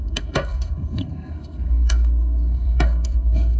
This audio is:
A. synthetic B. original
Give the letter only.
A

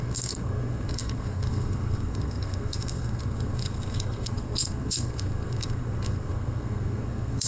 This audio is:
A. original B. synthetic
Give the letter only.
B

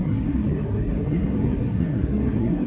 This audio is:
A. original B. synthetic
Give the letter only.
B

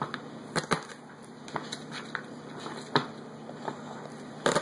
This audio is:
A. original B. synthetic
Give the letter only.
A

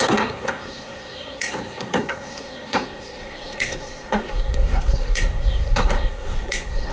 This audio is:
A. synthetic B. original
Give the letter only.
A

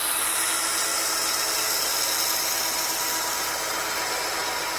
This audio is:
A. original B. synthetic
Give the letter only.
A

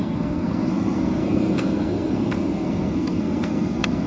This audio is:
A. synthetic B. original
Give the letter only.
A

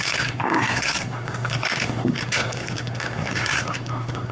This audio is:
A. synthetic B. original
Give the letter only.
A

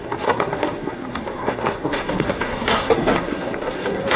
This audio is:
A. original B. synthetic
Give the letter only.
B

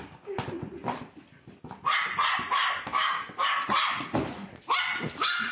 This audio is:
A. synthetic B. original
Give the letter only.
B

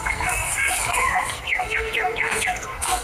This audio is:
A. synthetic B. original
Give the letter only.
A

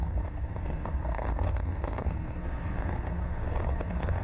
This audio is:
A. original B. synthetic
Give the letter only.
B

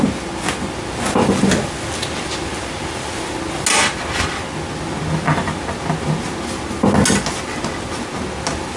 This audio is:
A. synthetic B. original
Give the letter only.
B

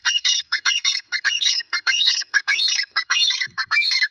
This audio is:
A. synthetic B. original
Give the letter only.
A